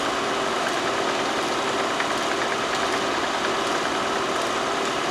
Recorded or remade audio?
recorded